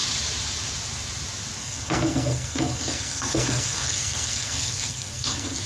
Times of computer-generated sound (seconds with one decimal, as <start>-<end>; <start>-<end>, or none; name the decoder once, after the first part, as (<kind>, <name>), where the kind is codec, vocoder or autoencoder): 1.6-5.7 (codec, SNAC)